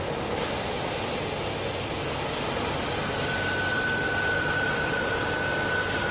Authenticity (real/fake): real